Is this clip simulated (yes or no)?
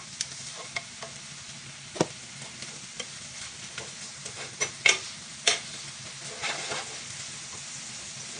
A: no